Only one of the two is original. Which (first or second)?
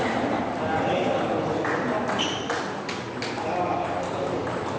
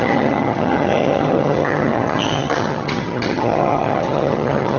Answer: first